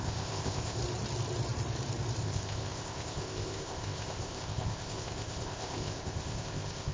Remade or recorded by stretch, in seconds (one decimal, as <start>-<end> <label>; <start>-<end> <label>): 0.0-0.8 remade; 0.8-2.2 recorded; 2.2-6.9 remade